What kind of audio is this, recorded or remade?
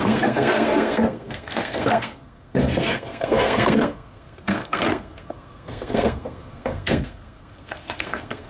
remade